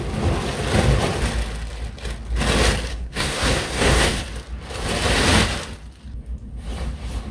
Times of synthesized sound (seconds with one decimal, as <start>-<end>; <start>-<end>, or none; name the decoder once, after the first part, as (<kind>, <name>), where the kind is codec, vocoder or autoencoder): 2.9-4.2 (codec, SNAC)